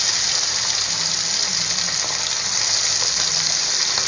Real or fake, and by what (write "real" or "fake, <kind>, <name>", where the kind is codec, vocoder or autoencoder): real